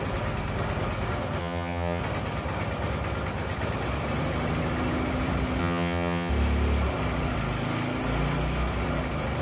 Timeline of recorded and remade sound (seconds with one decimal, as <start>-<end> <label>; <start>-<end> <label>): 0.0-1.4 recorded; 1.4-2.0 remade; 2.0-5.6 recorded; 5.6-6.3 remade; 6.3-9.4 recorded